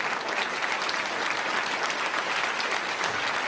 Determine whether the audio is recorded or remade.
recorded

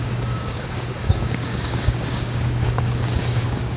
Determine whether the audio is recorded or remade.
remade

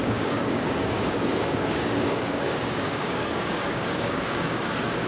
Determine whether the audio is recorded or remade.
remade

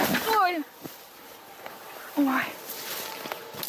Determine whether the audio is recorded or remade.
recorded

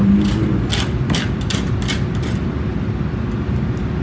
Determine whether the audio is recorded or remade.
recorded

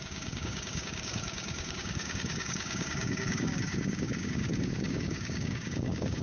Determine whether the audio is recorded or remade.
remade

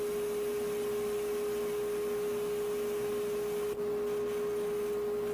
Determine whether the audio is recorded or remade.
recorded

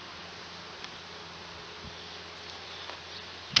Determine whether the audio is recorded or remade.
recorded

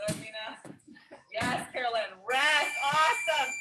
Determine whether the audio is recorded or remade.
remade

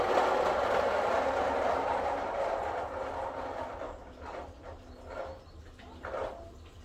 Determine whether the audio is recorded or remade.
recorded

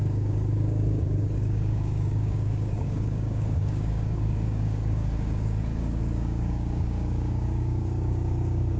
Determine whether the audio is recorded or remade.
remade